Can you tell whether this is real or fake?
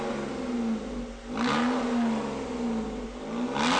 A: real